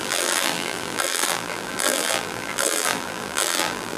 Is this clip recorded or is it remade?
remade